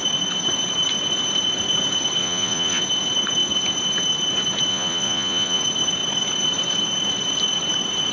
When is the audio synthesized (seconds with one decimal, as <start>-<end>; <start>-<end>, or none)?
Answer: 2.2-2.8; 4.7-5.6